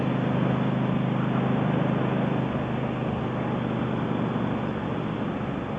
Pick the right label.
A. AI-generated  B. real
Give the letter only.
B